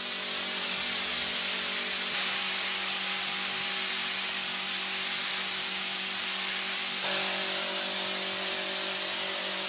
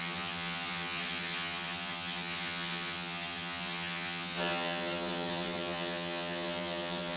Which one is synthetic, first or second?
second